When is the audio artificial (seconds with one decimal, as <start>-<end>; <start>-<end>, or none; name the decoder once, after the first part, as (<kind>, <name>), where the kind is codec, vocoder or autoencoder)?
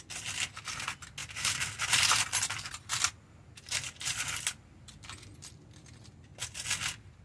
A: none